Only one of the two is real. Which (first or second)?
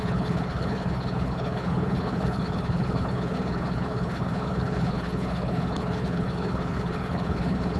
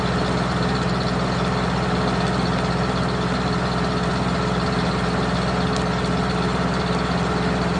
second